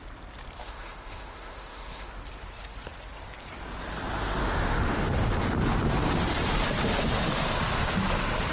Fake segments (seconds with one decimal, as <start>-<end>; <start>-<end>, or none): 0.6-2.1; 4.4-5.4